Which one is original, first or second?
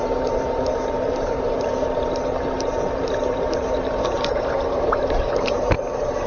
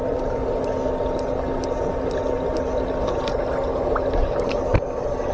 second